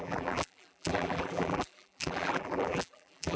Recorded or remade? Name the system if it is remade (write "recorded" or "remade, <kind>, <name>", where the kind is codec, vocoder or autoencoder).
remade, vocoder, BigVGAN v2